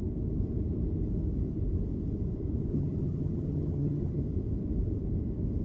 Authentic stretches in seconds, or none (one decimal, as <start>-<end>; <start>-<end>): 0.0-2.7; 4.2-5.6